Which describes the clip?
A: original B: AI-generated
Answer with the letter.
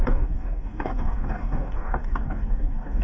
B